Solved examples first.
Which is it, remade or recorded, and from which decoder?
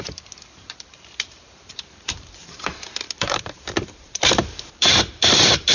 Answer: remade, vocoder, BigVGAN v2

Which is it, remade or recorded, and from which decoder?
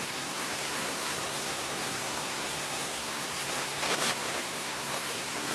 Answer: remade, codec, SNAC